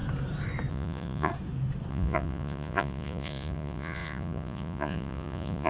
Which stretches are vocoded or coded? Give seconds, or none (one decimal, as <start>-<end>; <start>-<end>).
0.7-1.3; 1.9-5.7

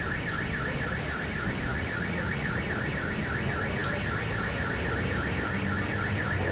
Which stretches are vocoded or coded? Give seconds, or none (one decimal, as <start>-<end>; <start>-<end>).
1.7-2.6

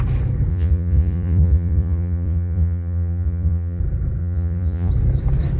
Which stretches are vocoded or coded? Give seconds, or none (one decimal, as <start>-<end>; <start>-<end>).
0.5-3.8; 4.2-4.9

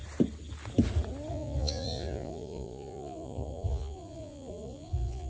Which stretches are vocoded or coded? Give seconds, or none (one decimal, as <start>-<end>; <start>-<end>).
1.3-5.3

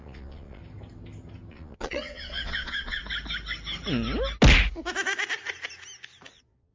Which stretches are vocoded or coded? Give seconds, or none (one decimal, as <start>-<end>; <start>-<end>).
0.0-0.6; 1.5-3.0; 6.3-6.7